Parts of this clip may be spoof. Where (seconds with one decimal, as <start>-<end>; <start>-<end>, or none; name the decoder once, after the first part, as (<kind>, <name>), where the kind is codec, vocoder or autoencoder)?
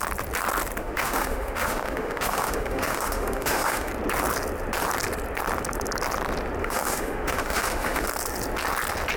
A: 0.8-3.9 (autoencoder, DAC-VAE); 6.6-8.1